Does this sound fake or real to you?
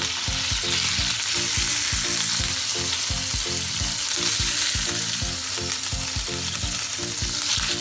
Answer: real